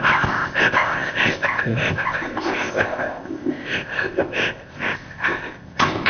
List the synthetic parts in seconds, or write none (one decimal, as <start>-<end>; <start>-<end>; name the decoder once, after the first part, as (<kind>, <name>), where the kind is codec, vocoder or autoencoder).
0.0-6.1 (codec, ZipCodec)